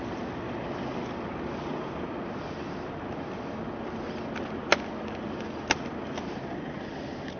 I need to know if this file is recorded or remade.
recorded